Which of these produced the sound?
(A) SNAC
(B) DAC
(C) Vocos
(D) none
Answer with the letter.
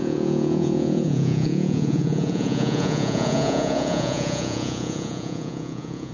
C